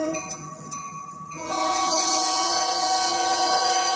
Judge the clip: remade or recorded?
remade